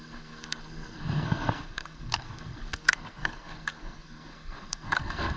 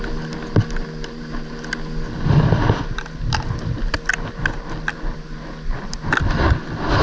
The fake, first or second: first